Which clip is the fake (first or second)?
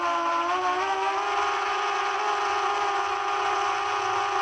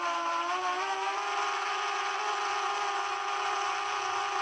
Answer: second